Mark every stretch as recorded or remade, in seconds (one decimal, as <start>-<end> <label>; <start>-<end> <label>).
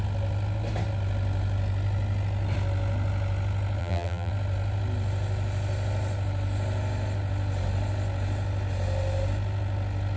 0.0-3.8 recorded; 3.8-4.3 remade; 4.3-10.2 recorded